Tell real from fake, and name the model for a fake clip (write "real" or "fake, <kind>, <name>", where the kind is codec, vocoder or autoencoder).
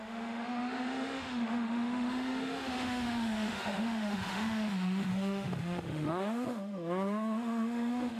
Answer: fake, autoencoder, DAC-VAE